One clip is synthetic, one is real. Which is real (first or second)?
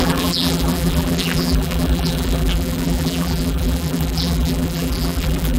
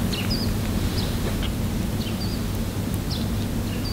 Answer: second